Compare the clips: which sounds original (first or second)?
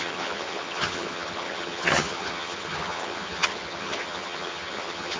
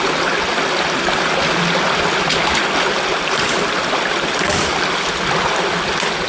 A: second